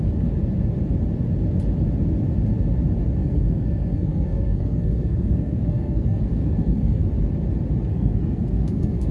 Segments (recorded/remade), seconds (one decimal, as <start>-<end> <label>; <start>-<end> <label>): 0.0-3.2 recorded; 3.2-7.1 remade; 7.1-7.9 recorded; 7.9-9.1 remade